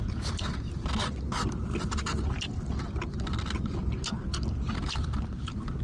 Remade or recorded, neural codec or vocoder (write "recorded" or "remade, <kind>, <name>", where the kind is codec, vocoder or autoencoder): recorded